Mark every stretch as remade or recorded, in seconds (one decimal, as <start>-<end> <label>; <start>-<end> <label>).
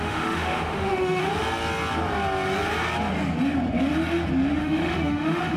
0.0-1.2 remade; 1.2-4.6 recorded; 4.6-5.6 remade